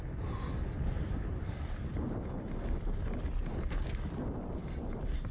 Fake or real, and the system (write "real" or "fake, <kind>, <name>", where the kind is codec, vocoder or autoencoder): real